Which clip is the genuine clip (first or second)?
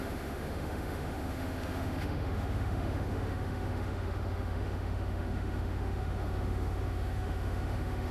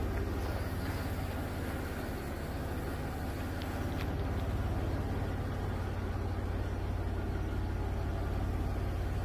second